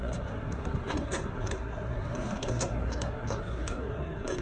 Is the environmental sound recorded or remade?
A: remade